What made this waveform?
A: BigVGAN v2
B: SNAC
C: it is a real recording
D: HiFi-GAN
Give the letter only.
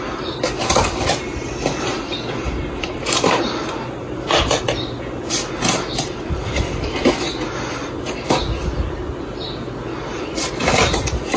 C